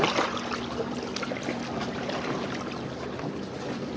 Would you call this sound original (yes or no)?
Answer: yes